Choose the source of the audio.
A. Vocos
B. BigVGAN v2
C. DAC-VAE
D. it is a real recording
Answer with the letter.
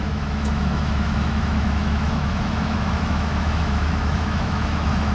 C